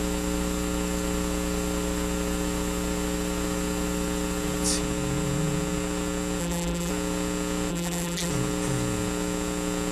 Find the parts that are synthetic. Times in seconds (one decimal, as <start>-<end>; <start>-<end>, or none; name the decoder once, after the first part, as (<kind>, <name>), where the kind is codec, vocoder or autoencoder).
6.4-6.9 (vocoder, BigVGAN v2); 7.7-8.3